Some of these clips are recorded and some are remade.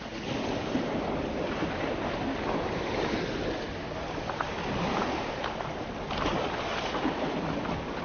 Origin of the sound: recorded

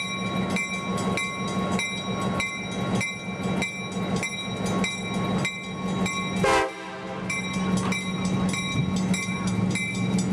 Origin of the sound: recorded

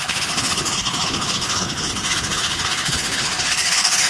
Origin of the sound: remade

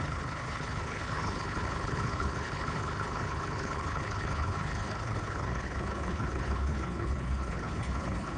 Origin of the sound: remade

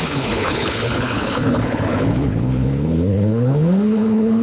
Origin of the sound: remade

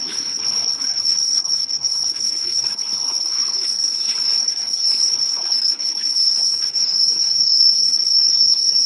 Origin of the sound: remade